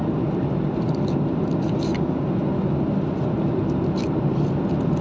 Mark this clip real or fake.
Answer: real